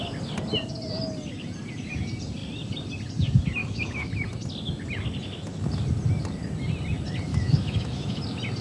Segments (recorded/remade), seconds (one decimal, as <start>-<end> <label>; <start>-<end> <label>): 0.0-3.6 recorded; 3.6-4.1 remade; 4.1-7.3 recorded; 7.3-8.2 remade; 8.2-8.6 recorded